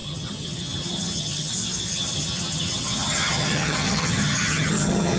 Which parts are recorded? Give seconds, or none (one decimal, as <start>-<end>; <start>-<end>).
1.5-1.9